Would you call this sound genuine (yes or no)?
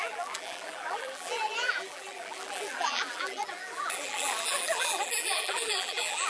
no